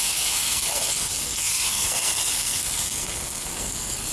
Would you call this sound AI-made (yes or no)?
yes